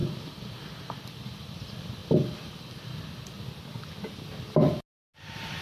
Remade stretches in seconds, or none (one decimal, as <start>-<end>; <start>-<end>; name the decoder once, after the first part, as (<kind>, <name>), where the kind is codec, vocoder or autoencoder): none